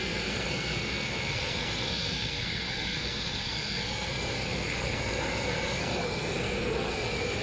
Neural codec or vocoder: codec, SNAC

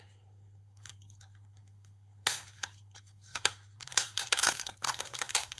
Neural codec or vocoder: codec, SNAC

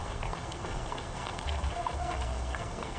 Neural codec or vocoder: codec, SNAC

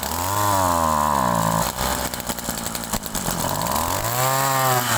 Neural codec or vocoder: none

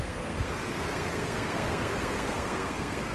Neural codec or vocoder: codec, SNAC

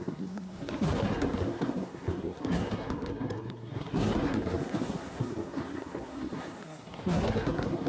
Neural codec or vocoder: codec, SNAC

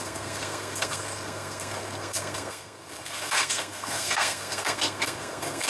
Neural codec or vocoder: codec, SNAC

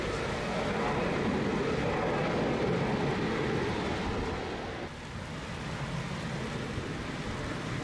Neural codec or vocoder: none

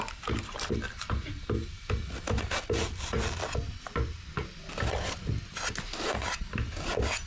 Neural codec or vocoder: none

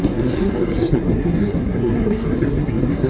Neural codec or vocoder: codec, SNAC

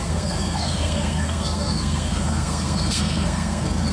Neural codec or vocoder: codec, SNAC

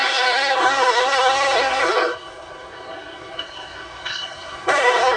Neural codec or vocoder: codec, SNAC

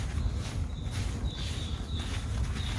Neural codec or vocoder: none